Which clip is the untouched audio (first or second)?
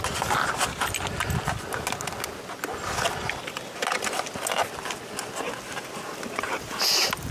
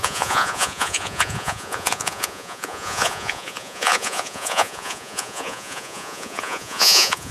first